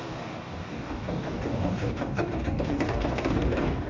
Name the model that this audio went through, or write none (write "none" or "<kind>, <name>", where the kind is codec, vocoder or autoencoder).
codec, DAC